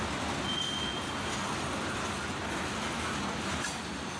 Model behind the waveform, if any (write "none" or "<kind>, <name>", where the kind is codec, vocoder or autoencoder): none